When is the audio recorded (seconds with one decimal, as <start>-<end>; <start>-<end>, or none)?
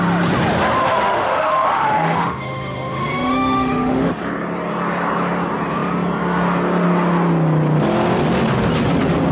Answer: 0.0-0.8; 4.1-9.3